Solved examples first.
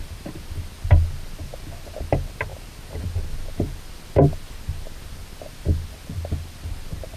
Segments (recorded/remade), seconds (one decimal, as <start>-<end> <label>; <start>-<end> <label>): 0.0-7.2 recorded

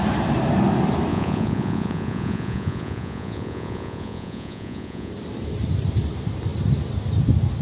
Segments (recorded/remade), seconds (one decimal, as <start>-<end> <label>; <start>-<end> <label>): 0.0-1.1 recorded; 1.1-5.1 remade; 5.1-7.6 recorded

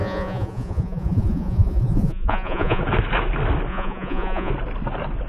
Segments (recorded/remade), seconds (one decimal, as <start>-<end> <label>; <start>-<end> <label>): 0.0-2.8 remade; 2.8-3.7 recorded; 3.7-4.5 remade; 4.5-5.3 recorded

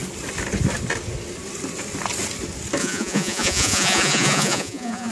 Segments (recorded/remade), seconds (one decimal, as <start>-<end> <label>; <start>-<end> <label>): 0.0-2.8 recorded; 2.8-5.1 remade